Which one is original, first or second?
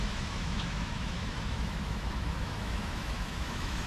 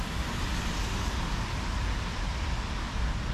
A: second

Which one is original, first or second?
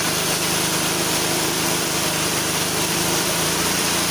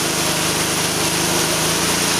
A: second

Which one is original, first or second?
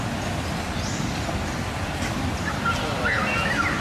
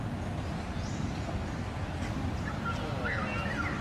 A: second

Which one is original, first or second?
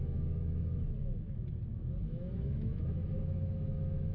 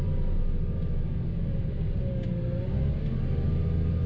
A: second